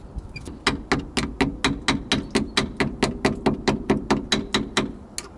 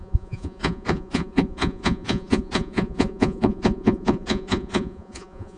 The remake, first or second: second